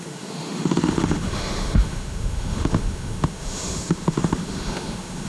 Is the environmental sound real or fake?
fake